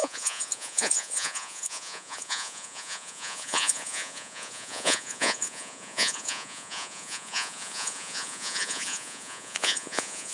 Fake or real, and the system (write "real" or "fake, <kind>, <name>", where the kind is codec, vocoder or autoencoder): fake, vocoder, Vocos